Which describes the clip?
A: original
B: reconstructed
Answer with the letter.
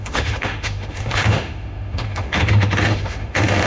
B